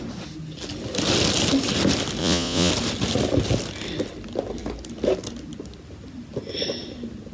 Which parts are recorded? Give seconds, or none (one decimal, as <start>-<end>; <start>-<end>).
0.0-2.2; 2.7-7.3